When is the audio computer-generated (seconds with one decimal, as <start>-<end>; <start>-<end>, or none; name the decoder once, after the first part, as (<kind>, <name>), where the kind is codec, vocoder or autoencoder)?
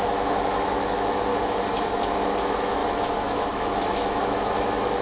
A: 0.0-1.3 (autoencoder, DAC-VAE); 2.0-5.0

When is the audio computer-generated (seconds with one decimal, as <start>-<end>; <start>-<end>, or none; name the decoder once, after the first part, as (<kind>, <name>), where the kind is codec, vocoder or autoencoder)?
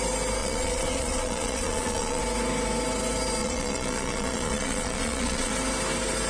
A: 0.4-2.2 (vocoder, Vocos); 3.4-5.5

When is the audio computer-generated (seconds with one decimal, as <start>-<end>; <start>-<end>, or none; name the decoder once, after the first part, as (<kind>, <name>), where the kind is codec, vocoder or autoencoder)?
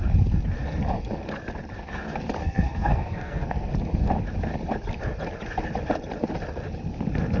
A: 2.4-3.7 (codec, SNAC)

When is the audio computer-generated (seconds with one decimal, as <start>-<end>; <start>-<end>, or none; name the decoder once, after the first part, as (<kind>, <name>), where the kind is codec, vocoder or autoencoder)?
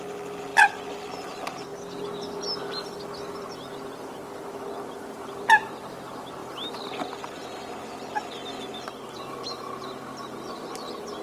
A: none